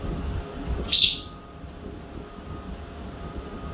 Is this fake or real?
real